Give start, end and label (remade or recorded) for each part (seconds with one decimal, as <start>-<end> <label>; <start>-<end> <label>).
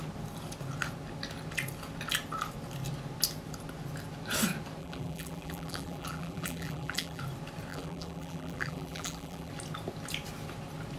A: 0.0-4.8 recorded; 4.8-7.2 remade; 7.2-7.7 recorded; 7.7-9.5 remade; 9.5-11.0 recorded